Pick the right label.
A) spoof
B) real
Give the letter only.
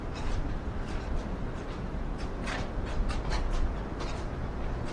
A